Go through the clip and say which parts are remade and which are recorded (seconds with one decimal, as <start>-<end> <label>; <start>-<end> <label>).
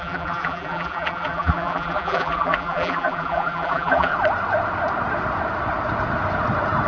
0.0-4.1 remade; 4.1-6.9 recorded